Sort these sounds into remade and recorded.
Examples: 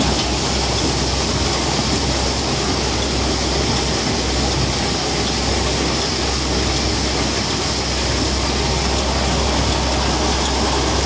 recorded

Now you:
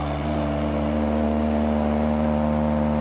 recorded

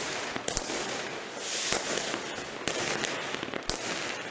recorded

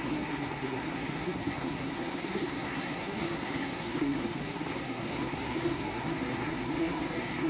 remade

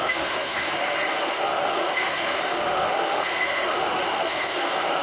remade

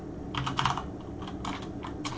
recorded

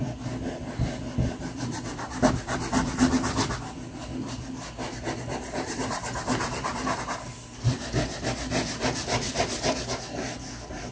recorded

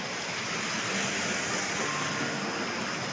recorded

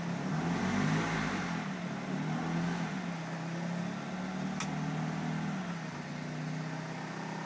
recorded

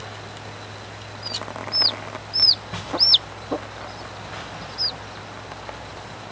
recorded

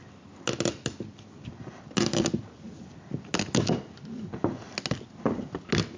recorded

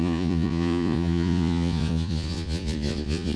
remade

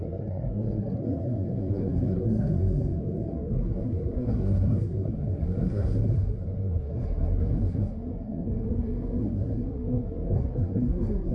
remade